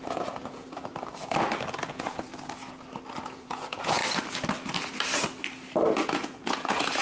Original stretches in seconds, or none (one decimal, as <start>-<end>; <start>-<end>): 0.9-1.9; 2.3-3.2; 4.0-5.9